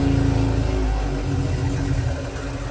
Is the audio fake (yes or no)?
no